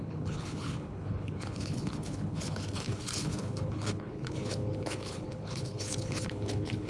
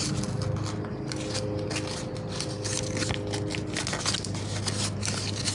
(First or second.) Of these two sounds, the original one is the second